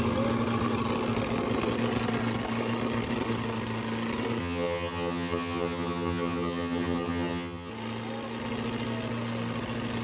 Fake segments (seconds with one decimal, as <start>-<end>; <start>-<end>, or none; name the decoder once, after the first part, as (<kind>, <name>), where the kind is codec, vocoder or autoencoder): 4.4-7.7 (vocoder, HiFi-GAN)